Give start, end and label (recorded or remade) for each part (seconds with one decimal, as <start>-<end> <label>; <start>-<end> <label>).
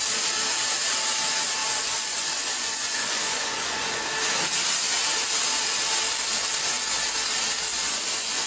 0.0-1.6 recorded; 1.6-4.1 remade; 4.1-7.7 recorded; 7.7-8.5 remade